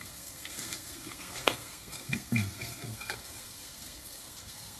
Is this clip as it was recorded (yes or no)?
no